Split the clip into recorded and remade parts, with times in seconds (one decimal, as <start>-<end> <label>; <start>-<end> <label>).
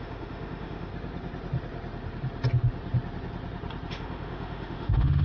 0.0-0.9 remade; 0.9-3.9 recorded; 3.9-5.2 remade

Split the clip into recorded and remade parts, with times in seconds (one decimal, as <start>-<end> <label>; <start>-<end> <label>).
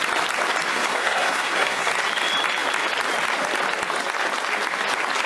0.0-0.7 recorded; 0.7-1.9 remade; 1.9-5.3 recorded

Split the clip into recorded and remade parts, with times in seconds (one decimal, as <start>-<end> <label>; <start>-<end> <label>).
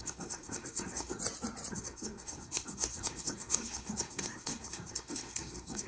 0.0-1.2 remade; 1.2-1.7 recorded; 1.7-5.9 remade